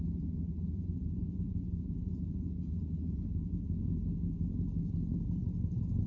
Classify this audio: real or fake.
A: fake